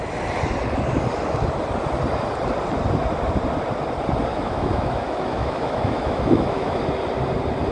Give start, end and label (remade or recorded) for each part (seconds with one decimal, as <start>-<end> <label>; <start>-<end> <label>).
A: 0.0-4.3 recorded; 4.3-6.8 remade; 6.8-7.7 recorded